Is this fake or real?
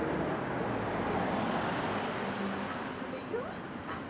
real